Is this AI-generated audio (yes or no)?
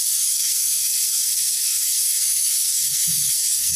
yes